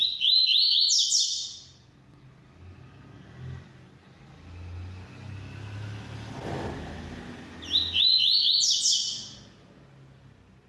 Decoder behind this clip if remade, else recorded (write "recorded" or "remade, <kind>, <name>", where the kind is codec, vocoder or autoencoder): recorded